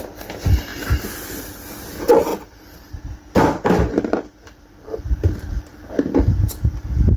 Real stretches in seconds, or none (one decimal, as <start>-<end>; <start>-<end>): 0.0-2.3; 5.0-7.2